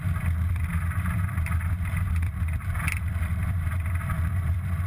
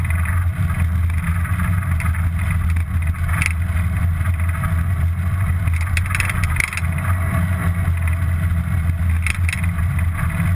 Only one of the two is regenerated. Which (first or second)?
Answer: first